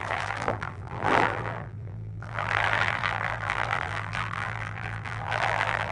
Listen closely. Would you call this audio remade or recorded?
remade